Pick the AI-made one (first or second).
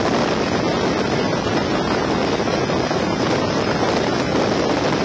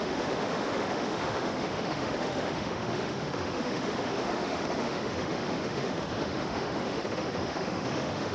second